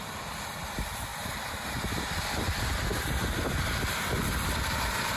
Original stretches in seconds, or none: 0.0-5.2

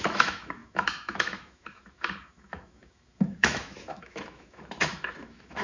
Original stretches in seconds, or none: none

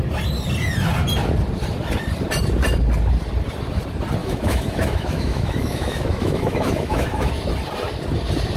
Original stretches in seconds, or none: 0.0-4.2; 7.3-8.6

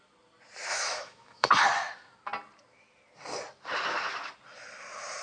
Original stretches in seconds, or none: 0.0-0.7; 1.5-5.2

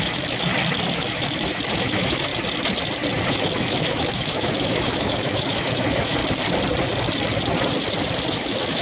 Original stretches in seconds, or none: 0.5-1.0; 2.3-3.3; 6.2-8.3

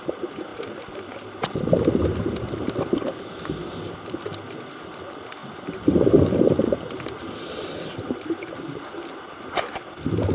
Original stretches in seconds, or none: 0.0-10.3

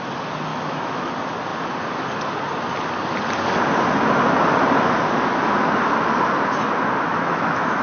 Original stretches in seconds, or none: 0.0-0.5; 1.1-7.1

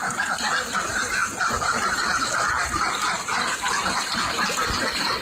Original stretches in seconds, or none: 0.0-5.2